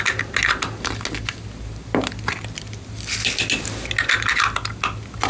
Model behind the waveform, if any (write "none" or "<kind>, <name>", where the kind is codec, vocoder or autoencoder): none